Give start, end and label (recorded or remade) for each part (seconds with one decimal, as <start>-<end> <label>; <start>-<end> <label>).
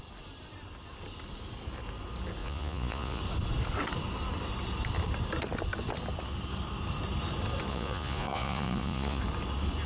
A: 0.0-2.4 recorded; 2.4-3.2 remade; 3.2-7.7 recorded; 7.7-9.2 remade; 9.2-9.9 recorded